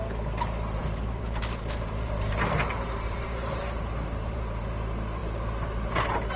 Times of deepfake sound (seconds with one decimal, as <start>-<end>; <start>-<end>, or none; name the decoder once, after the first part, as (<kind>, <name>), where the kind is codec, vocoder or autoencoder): 0.8-4.6 (vocoder, BigVGAN v2)